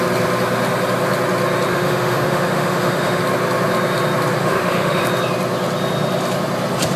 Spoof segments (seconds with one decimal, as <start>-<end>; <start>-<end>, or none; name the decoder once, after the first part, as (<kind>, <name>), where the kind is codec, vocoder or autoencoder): 1.7-3.2 (autoencoder, DAC-VAE); 4.4-5.0